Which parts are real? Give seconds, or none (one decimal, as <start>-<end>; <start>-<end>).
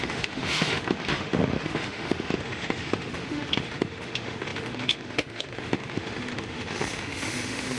none